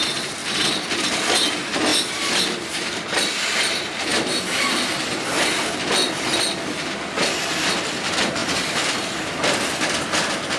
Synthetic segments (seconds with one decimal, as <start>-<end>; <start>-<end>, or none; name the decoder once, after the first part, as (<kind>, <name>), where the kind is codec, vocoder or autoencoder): 1.9-3.4 (vocoder, BigVGAN v2); 4.1-5.2; 8.4-9.1